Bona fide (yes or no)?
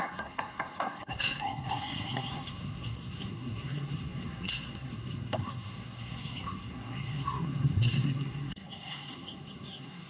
no